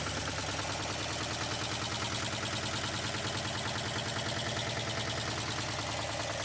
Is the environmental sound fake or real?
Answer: real